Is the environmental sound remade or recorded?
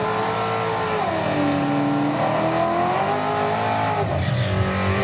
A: recorded